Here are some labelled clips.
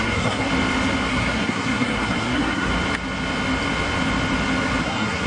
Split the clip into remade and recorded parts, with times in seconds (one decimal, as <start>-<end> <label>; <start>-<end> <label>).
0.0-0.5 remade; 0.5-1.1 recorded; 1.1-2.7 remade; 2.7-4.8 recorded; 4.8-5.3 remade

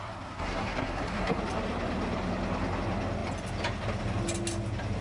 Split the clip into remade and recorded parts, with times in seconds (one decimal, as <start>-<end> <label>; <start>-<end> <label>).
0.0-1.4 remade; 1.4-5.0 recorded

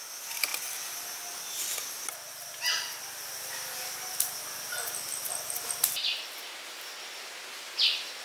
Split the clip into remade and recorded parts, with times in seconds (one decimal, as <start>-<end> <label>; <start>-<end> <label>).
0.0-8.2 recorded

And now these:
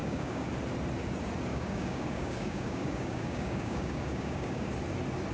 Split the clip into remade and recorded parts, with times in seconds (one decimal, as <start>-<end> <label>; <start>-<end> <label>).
0.0-0.5 remade; 0.5-1.5 recorded; 1.5-4.7 remade; 4.7-5.3 recorded

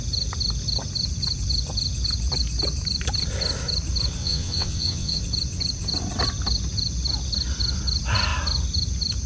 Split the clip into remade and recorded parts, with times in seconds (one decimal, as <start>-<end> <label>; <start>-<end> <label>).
0.0-4.2 recorded; 4.2-5.2 remade; 5.2-9.3 recorded

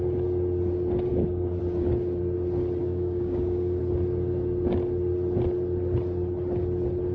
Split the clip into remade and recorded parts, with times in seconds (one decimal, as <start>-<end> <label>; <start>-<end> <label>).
0.0-1.1 recorded; 1.1-1.6 remade; 1.6-2.8 recorded; 2.8-3.8 remade; 3.8-7.1 recorded